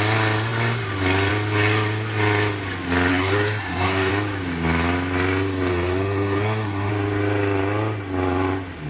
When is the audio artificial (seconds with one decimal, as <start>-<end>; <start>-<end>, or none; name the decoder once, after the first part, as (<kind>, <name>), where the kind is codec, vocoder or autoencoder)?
3.1-4.1 (codec, SNAC); 5.7-6.9